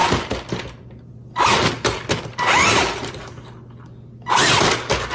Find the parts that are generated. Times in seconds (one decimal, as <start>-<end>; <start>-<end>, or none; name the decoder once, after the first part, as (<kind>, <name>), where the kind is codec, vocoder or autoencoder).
none